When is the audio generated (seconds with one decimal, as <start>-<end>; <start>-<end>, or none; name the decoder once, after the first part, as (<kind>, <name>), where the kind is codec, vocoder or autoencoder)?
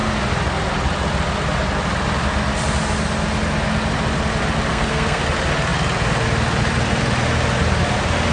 4.7-5.2 (codec, SNAC)